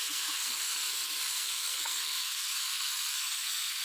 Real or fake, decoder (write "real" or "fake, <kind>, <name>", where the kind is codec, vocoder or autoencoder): fake, codec, SNAC